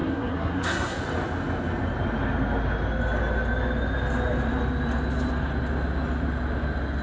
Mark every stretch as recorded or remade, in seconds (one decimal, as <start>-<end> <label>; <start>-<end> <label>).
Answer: 0.0-1.0 remade; 1.0-7.0 recorded

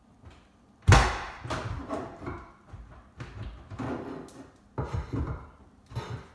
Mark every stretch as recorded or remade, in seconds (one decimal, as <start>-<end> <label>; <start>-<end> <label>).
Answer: 0.0-6.3 recorded